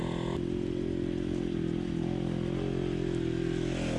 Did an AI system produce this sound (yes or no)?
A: no